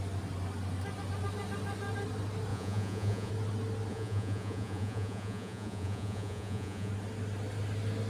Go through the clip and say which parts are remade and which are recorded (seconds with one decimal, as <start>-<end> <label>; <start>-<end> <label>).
0.0-2.5 recorded; 2.5-3.3 remade; 3.3-3.9 recorded; 3.9-6.9 remade; 6.9-8.1 recorded